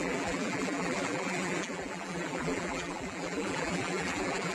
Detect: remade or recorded remade